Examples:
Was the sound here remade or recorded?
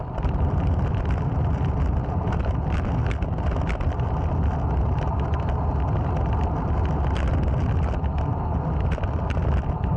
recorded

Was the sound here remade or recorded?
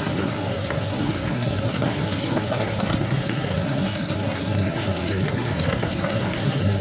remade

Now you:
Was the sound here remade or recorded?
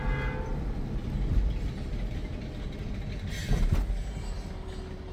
recorded